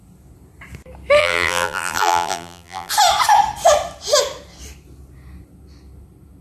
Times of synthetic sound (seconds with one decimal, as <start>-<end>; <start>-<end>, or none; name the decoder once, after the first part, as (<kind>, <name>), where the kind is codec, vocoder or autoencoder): 1.2-2.9 (vocoder, BigVGAN v2)